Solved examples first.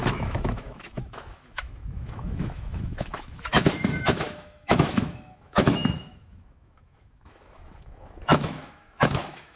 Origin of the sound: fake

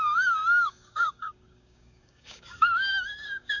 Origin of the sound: fake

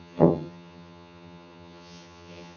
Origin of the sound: fake